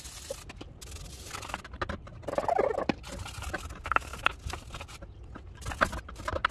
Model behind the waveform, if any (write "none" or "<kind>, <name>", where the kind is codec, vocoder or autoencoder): none